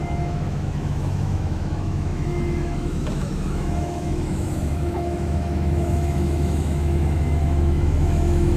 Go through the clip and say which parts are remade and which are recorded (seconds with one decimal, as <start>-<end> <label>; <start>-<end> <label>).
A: 0.0-8.6 remade